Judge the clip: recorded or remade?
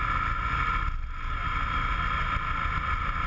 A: recorded